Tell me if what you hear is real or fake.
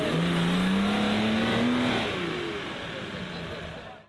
real